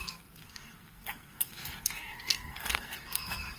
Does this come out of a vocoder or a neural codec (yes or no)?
yes